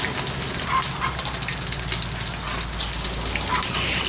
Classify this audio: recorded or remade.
recorded